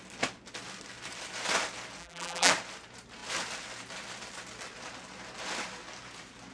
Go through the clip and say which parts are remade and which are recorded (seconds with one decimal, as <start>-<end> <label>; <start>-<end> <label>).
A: 0.0-2.0 recorded; 2.0-2.5 remade; 2.5-6.5 recorded